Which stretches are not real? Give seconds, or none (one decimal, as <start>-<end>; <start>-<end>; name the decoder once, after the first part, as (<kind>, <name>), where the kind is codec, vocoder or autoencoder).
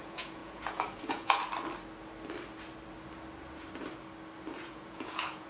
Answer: 0.0-1.5 (vocoder, Vocos); 4.6-5.5